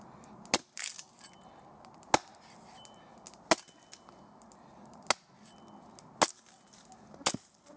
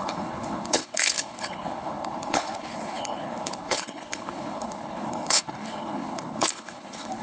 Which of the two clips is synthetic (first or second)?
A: second